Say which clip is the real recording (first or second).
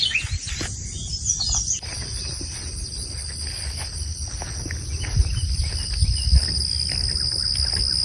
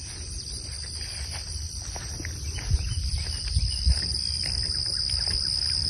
first